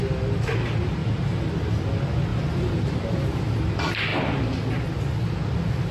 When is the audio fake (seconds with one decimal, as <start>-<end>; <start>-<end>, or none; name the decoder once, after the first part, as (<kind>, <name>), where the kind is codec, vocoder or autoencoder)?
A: 1.0-1.8 (vocoder, BigVGAN v2); 2.3-3.4